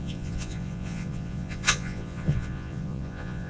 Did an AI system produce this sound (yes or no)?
yes